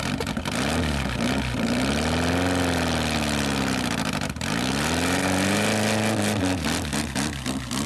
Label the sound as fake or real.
real